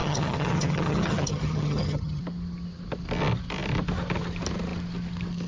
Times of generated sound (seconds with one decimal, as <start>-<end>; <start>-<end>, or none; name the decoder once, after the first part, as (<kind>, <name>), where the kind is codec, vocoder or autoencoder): 0.0-2.2 (vocoder, HiFi-GAN)